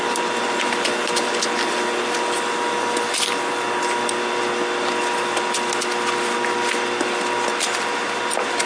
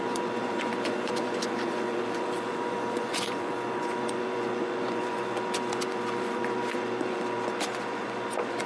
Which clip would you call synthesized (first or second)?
second